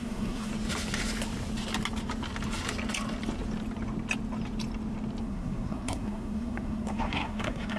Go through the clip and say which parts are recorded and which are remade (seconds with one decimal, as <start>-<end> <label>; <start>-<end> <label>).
0.0-0.5 remade; 0.5-5.2 recorded; 5.2-7.8 remade